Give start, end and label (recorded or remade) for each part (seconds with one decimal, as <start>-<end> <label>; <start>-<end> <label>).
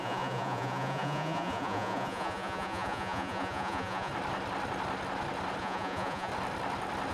0.0-4.1 remade; 4.1-5.6 recorded; 5.6-6.3 remade; 6.3-7.1 recorded